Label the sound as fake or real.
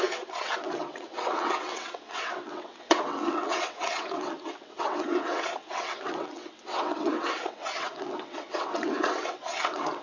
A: fake